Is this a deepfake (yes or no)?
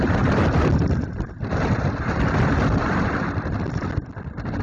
no